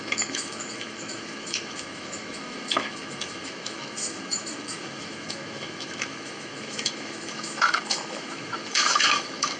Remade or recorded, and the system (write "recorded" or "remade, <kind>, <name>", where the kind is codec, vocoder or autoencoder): remade, autoencoder, DAC-VAE